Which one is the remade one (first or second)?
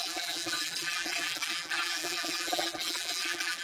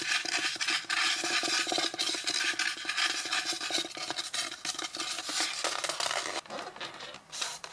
first